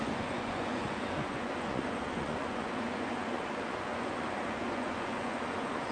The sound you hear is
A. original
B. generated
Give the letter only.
B